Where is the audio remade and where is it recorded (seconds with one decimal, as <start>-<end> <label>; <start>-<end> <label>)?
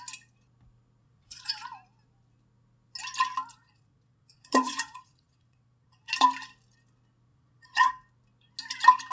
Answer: 0.0-1.0 recorded; 1.0-1.5 remade; 1.5-3.6 recorded; 3.6-6.1 remade; 6.1-7.3 recorded; 7.3-7.9 remade; 7.9-9.1 recorded